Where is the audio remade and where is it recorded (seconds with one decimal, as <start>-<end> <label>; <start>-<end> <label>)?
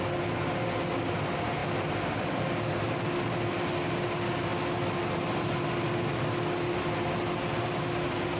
0.0-8.4 recorded